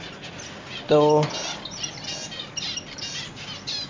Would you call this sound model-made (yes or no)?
no